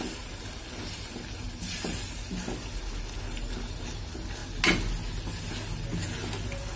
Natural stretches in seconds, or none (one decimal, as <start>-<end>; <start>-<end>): 0.0-6.8